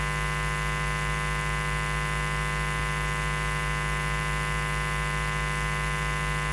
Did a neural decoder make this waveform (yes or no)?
no